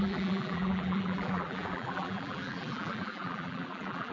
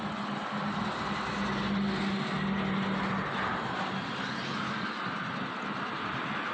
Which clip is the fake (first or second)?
first